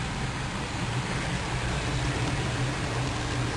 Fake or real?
fake